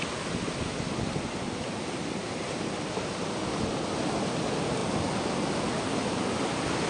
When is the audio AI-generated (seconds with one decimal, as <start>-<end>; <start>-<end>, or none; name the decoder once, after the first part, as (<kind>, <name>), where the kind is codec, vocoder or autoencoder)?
none